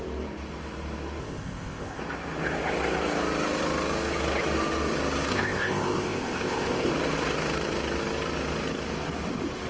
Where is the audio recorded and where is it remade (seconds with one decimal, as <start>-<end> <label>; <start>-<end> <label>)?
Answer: 0.0-1.2 recorded; 1.2-2.0 remade; 2.0-5.3 recorded; 5.3-6.9 remade; 6.9-9.7 recorded